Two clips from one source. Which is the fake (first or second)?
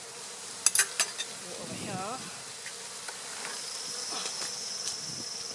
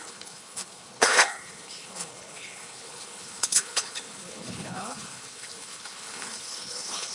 second